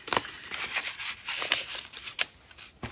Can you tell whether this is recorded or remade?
recorded